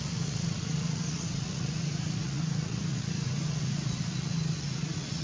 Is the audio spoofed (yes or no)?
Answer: yes